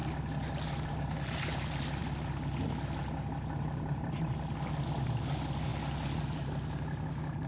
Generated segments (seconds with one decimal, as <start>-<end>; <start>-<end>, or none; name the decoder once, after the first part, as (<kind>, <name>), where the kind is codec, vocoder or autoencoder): none